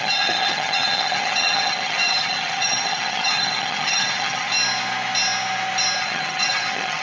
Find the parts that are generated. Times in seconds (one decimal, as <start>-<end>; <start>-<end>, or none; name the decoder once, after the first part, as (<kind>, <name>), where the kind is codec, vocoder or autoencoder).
0.0-4.5 (vocoder, HiFi-GAN); 6.0-7.0